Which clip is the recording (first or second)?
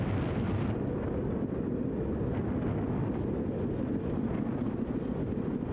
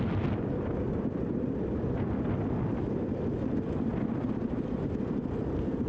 first